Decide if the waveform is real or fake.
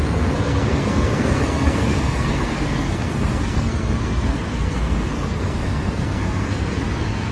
fake